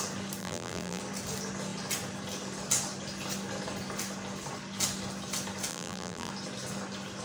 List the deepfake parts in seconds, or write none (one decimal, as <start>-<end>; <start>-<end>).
0.4-1.0; 5.7-6.3